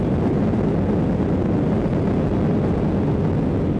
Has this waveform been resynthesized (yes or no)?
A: no